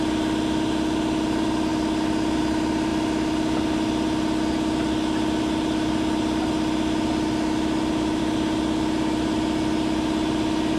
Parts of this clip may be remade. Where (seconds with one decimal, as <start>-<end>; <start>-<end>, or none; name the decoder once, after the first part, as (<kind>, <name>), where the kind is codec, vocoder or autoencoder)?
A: none